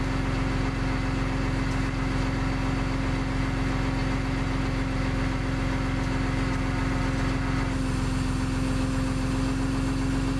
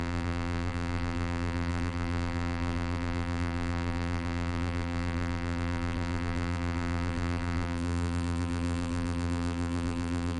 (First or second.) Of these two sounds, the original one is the first